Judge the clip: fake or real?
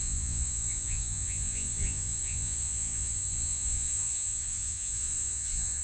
fake